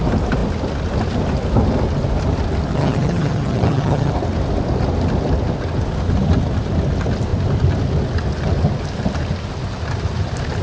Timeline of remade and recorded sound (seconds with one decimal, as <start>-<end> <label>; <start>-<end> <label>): 0.0-2.7 recorded; 2.7-4.1 remade; 4.1-10.6 recorded

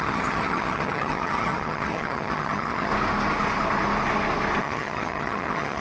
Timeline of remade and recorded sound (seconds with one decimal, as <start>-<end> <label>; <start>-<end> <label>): 0.0-2.9 remade; 2.9-4.6 recorded; 4.6-5.8 remade

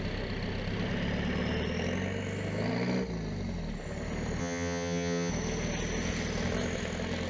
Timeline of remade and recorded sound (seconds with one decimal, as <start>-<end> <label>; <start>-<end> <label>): 0.0-4.4 recorded; 4.4-5.3 remade; 5.3-7.3 recorded

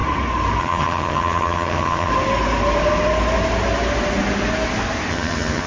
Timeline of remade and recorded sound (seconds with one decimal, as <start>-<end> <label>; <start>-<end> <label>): 0.0-0.6 recorded; 0.6-2.1 remade; 2.1-5.1 recorded; 5.1-5.7 remade

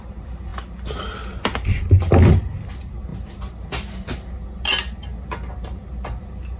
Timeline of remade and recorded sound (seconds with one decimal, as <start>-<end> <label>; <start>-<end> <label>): 0.0-6.6 recorded

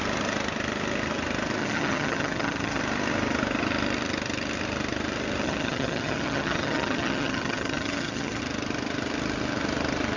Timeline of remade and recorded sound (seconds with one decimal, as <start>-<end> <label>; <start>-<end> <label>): 0.0-1.6 recorded; 1.6-2.8 remade; 2.8-5.4 recorded; 5.4-8.4 remade; 8.4-10.2 recorded